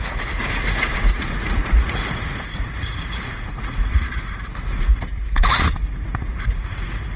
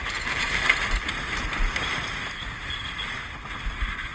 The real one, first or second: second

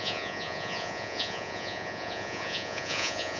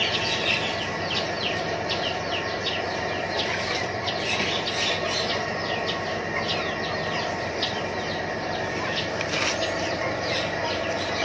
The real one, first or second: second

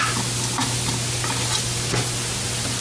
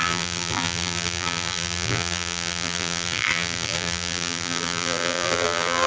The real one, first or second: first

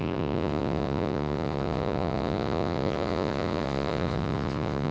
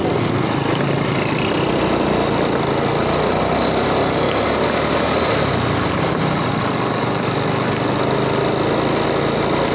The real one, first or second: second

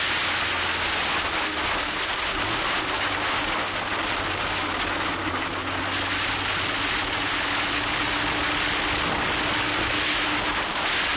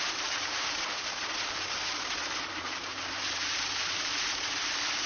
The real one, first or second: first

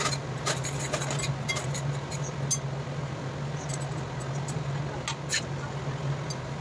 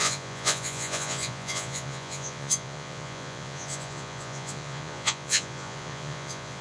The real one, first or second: first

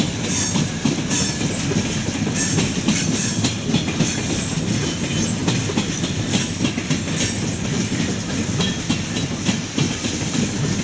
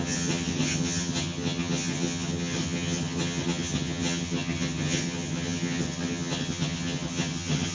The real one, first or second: first